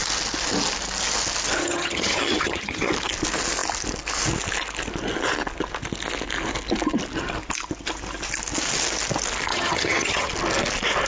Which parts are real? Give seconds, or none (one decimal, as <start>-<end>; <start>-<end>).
0.0-1.6; 2.9-9.5; 10.3-11.1